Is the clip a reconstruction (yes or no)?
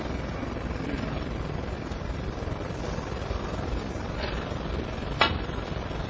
yes